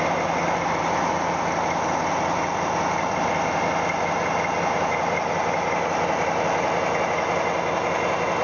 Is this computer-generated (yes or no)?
no